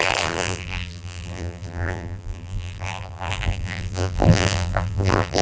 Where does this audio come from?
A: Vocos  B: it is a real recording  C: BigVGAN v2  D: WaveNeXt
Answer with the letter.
C